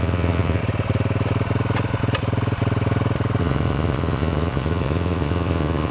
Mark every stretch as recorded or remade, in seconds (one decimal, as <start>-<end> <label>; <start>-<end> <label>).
0.0-0.6 remade; 0.6-3.4 recorded; 3.4-5.9 remade